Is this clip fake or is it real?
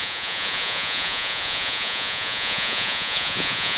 fake